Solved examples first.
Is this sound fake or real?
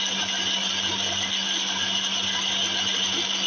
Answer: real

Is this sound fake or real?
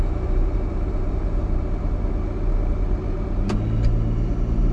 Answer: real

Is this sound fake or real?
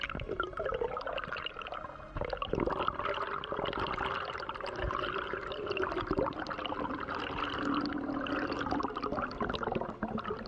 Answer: real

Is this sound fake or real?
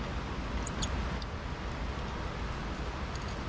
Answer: real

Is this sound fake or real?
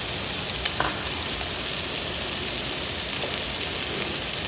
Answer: real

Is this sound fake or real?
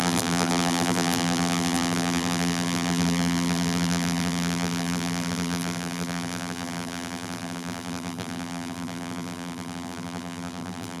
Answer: fake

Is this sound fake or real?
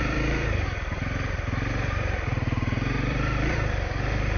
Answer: fake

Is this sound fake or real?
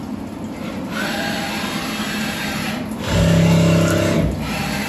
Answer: real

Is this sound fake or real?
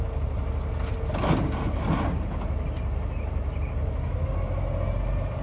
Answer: real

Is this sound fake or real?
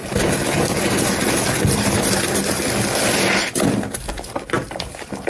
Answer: fake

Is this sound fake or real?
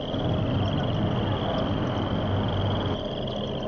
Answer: real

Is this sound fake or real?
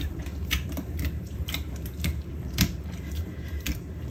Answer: fake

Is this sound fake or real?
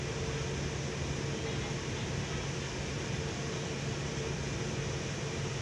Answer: real